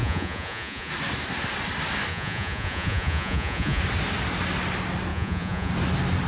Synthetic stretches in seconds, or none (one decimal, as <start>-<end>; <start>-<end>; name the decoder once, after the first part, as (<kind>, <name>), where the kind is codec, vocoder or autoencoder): 0.0-0.9 (vocoder, Vocos); 2.1-3.8; 5.1-5.7